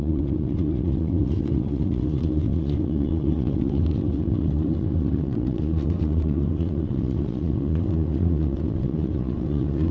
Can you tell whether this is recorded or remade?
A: remade